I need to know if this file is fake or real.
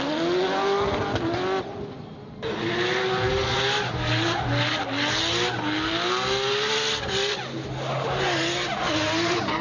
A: real